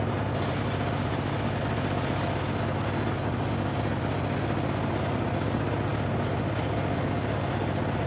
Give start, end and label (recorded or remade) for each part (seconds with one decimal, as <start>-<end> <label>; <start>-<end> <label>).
0.0-8.1 recorded